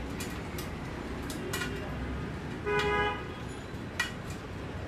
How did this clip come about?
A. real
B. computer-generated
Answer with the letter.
A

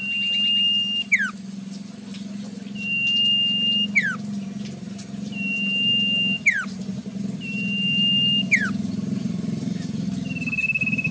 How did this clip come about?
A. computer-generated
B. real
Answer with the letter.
B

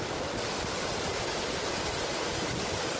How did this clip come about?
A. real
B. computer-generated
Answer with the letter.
A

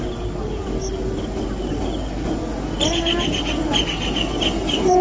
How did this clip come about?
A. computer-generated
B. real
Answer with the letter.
B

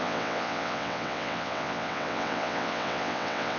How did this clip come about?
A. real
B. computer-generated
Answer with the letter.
B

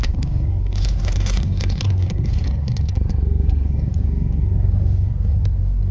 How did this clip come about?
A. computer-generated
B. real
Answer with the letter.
A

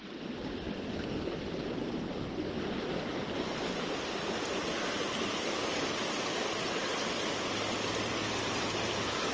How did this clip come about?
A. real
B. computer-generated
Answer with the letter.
A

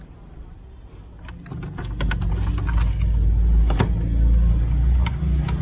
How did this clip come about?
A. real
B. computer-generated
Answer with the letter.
A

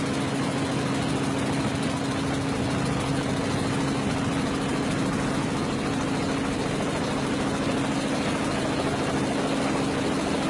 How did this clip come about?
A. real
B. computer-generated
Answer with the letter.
A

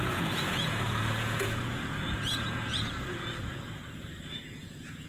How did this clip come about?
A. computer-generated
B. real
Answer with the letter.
A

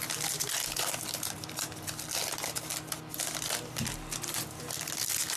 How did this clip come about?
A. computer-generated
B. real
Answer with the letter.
B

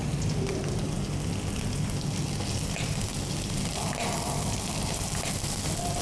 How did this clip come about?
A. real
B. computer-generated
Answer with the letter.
A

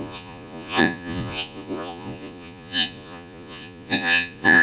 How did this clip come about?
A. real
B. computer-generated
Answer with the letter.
B